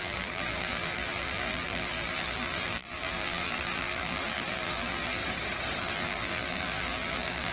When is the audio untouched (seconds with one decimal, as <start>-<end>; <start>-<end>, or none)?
5.2-5.8